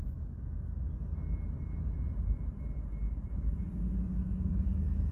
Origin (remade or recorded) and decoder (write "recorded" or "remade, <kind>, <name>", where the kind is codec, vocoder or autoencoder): recorded